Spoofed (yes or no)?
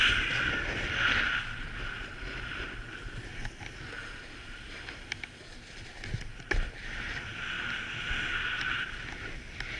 no